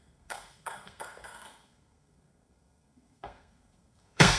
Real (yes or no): no